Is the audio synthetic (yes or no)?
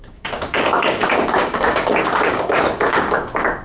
yes